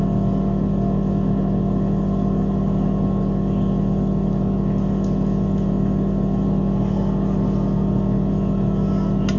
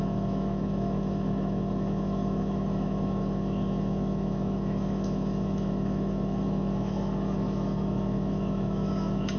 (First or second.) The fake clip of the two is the second